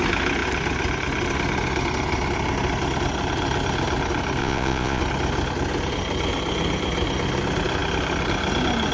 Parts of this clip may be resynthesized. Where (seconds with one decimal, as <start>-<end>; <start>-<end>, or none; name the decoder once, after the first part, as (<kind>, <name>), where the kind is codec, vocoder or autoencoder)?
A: 4.4-5.0 (vocoder, Vocos)

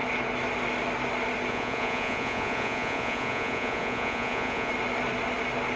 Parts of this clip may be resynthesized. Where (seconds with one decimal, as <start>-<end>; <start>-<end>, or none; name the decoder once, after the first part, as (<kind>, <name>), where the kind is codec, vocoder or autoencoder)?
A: 1.5-4.7 (vocoder, Vocos)

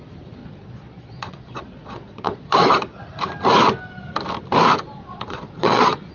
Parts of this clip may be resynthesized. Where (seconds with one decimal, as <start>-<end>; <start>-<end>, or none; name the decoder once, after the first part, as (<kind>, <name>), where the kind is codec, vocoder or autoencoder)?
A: 0.4-3.0 (vocoder, Vocos); 5.0-6.1

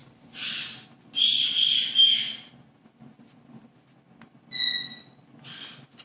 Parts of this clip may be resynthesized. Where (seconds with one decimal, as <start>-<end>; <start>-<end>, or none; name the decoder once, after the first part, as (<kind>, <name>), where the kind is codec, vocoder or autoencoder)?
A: none

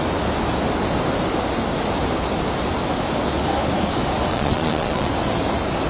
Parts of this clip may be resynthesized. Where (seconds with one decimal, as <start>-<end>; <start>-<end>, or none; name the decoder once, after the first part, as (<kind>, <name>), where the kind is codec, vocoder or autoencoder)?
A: 4.3-5.1 (vocoder, Vocos)

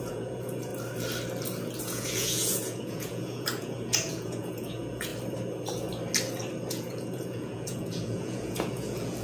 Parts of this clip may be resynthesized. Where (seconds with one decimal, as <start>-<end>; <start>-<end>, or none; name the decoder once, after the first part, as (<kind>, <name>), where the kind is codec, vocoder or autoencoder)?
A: 0.0-0.7 (vocoder, Vocos); 1.8-5.1; 6.7-9.2